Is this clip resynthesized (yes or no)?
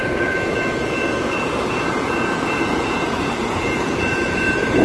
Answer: yes